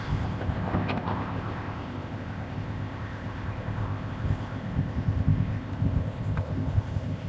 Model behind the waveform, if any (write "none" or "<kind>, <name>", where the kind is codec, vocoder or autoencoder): codec, ZipCodec